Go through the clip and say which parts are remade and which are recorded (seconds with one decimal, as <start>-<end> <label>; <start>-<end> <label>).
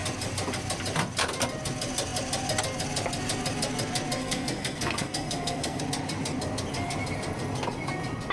0.0-4.2 recorded; 4.2-5.8 remade; 5.8-8.3 recorded